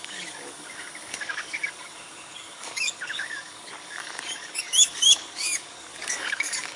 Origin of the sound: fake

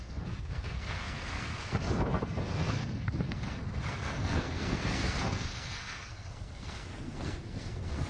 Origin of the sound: fake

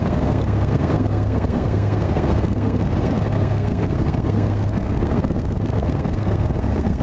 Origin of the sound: fake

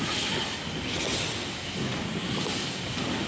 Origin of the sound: real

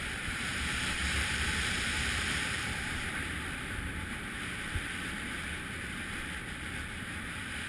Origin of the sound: fake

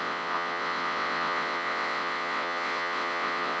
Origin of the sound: fake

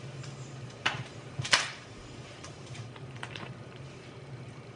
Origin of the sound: fake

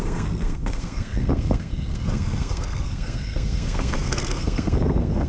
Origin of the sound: fake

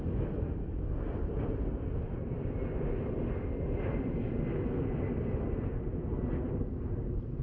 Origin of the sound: real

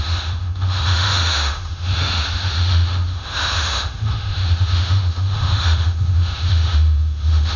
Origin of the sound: fake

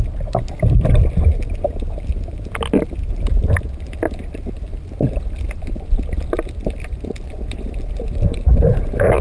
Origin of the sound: fake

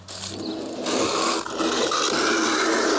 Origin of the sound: real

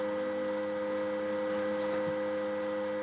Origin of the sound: real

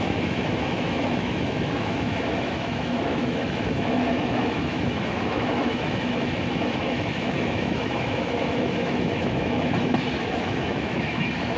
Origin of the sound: fake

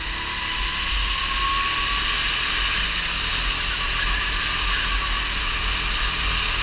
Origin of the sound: real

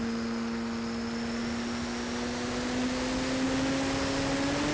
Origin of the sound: real